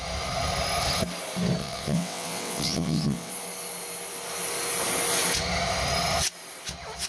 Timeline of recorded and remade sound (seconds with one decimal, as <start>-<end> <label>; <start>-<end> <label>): 0.0-1.6 recorded; 1.6-3.3 remade; 3.3-7.1 recorded